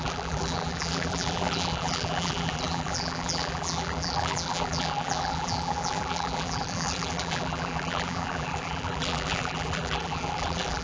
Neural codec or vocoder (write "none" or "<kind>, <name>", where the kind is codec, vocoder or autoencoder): vocoder, BigVGAN v2